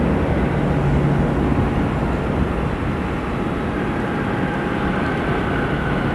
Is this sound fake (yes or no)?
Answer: no